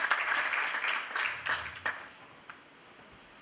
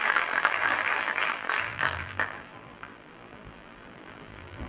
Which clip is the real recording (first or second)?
first